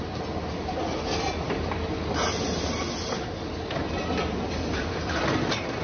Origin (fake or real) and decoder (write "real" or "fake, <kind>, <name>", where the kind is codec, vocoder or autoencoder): real